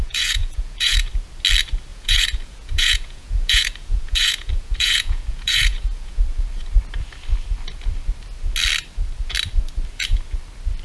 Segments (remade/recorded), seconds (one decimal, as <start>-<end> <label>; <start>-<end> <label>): 0.0-1.1 remade; 1.1-1.9 recorded; 1.9-6.2 remade; 6.2-10.8 recorded

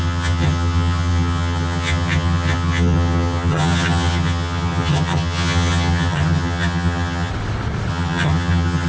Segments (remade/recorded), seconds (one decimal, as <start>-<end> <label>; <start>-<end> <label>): 0.0-7.3 remade; 7.3-7.9 recorded; 7.9-8.9 remade